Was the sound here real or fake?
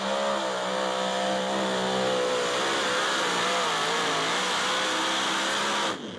real